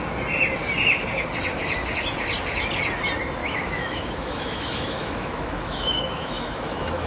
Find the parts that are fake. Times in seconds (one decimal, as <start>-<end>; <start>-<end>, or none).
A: 3.4-7.1